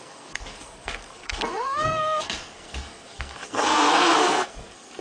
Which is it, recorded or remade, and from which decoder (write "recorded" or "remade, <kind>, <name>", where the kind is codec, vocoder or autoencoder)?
remade, codec, SNAC